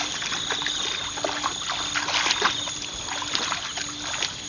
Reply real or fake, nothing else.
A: real